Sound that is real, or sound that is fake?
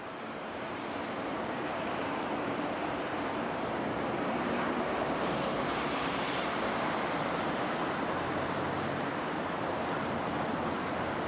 fake